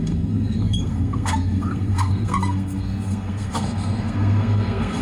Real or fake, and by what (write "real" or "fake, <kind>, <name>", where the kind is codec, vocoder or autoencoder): fake, codec, SNAC